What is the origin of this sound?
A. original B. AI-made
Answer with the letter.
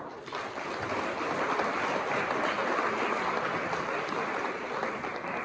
A